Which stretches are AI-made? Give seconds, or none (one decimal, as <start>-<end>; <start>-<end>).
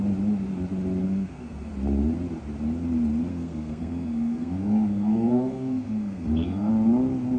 1.0-1.7; 3.3-6.7